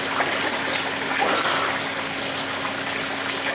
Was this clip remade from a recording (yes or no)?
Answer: no